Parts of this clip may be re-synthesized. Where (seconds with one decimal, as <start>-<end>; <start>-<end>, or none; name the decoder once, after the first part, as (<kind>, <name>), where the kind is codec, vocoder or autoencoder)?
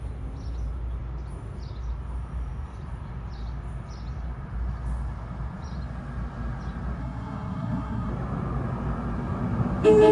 7.0-8.1 (codec, SNAC)